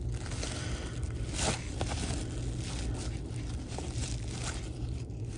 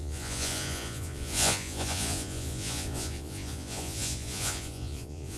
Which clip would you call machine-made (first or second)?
second